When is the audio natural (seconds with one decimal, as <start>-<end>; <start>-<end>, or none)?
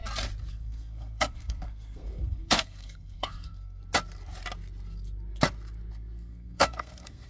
0.0-0.5; 3.8-5.9